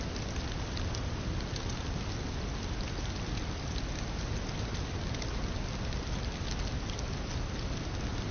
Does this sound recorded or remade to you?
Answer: recorded